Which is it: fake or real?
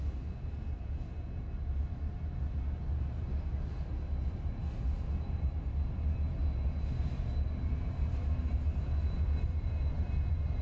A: real